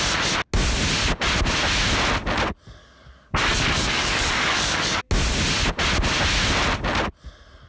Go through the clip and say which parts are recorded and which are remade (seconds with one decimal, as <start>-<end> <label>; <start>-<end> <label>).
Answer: 0.0-2.8 recorded; 2.8-5.0 remade; 5.0-7.7 recorded